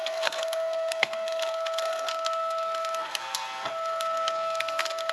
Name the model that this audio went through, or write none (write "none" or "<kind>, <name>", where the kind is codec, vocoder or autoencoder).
codec, SNAC